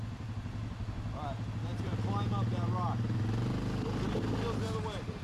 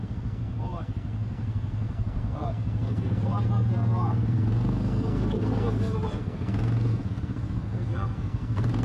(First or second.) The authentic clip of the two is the first